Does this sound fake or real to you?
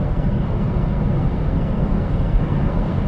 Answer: fake